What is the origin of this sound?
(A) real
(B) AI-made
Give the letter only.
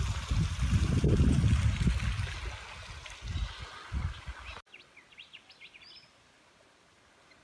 A